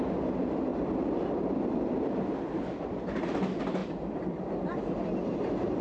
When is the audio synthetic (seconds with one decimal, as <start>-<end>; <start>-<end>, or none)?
0.7-3.0; 3.8-4.4